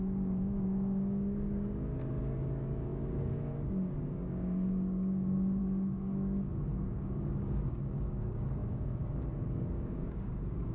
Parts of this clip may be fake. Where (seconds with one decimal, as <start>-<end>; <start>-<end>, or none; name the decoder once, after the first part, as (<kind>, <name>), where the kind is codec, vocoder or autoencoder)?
0.0-10.7 (codec, DAC)